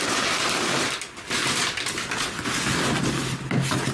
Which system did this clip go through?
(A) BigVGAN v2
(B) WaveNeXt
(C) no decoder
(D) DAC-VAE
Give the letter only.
C